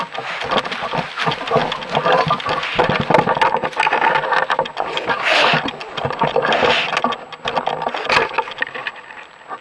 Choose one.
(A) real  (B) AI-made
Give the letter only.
A